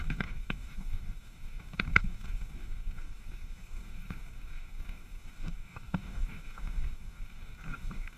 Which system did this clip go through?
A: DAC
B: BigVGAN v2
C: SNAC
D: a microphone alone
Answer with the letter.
A